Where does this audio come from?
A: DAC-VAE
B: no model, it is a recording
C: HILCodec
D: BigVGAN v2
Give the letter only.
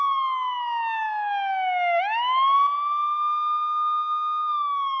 B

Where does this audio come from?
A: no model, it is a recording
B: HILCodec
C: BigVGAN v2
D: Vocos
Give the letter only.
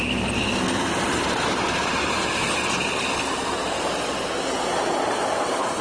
C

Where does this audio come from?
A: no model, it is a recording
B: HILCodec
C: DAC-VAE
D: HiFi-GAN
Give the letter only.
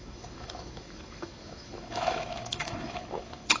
C